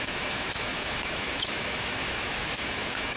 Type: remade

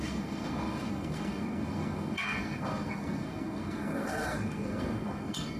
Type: remade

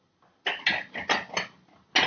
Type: recorded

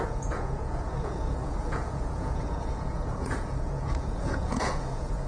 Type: remade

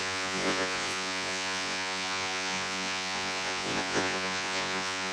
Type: remade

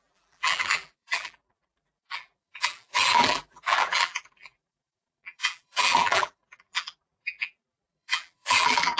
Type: remade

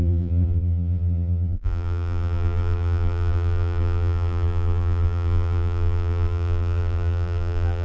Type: remade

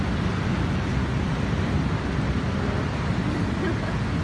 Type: recorded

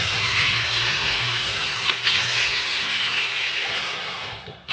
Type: remade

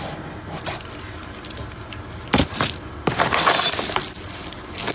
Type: recorded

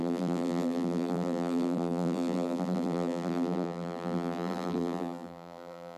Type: remade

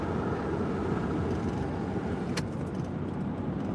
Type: recorded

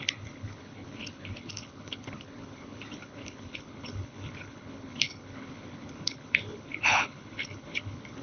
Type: remade